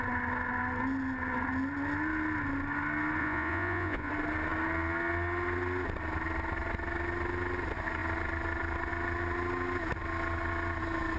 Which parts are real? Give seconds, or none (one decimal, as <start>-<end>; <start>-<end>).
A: 0.0-3.2; 4.1-11.2